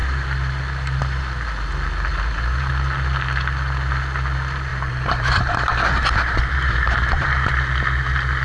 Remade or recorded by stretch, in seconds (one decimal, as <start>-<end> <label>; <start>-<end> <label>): 0.0-2.1 recorded; 2.1-2.7 remade; 2.7-4.7 recorded; 4.7-7.5 remade; 7.5-8.4 recorded